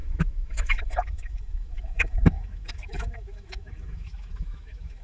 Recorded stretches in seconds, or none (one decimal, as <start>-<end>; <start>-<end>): none